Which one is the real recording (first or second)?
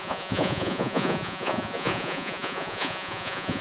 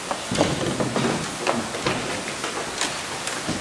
second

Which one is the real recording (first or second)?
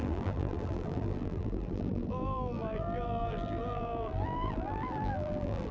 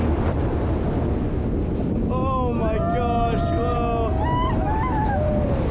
second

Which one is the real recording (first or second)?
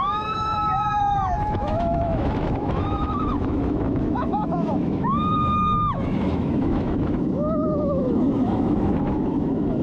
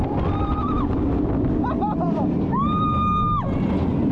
second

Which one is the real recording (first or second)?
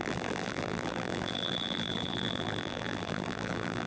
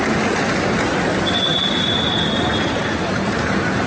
second